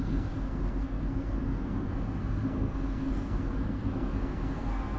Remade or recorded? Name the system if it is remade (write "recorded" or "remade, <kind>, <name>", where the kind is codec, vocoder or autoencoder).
remade, codec, SNAC